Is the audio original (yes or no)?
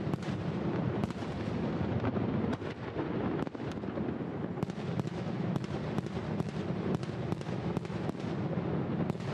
yes